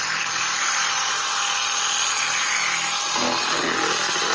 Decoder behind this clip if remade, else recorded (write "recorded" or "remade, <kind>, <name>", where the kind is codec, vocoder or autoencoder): recorded